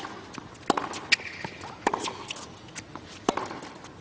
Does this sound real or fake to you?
real